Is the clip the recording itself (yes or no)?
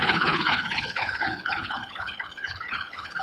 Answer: no